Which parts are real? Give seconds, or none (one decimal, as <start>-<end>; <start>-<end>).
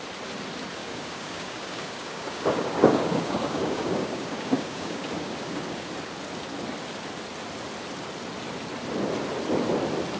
0.0-0.8; 5.9-10.2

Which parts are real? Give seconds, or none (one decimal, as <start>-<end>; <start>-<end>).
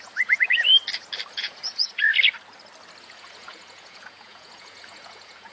0.7-1.3; 2.1-3.0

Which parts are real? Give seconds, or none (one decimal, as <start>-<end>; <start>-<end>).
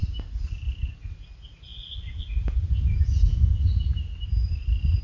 0.0-5.0